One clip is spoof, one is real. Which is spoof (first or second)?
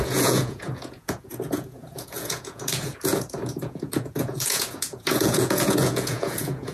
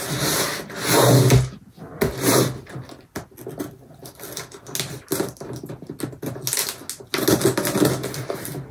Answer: first